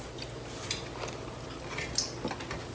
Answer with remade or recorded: recorded